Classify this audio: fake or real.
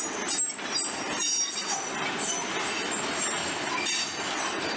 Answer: real